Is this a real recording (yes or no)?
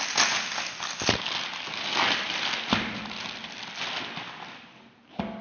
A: yes